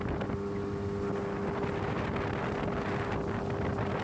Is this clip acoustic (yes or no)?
yes